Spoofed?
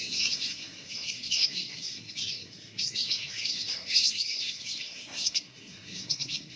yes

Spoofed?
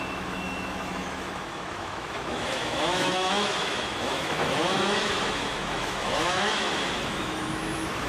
yes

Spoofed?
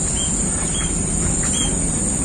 no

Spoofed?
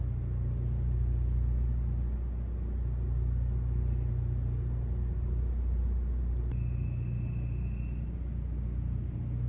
no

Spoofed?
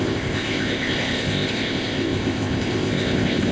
yes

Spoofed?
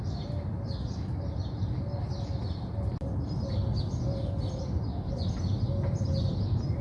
no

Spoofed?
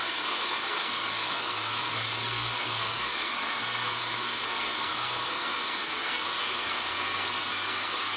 yes